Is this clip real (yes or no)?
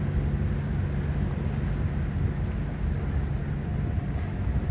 yes